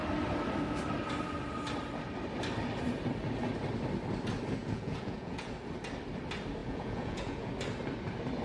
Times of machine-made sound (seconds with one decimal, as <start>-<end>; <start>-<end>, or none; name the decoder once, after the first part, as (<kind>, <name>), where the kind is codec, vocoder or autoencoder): 4.6-5.5 (vocoder, Vocos); 6.6-7.5